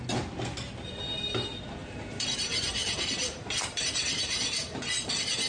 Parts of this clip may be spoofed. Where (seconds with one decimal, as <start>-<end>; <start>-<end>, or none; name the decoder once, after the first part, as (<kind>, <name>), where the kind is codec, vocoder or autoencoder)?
1.8-5.1 (vocoder, BigVGAN v2)